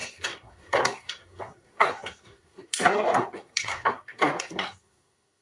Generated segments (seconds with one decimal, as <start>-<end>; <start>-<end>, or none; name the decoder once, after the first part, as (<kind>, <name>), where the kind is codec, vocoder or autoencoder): 0.0-5.4 (codec, SNAC)